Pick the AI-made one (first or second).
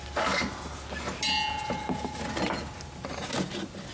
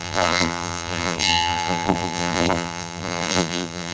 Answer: second